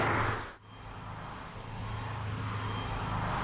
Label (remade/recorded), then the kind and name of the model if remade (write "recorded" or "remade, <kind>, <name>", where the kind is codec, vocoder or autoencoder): recorded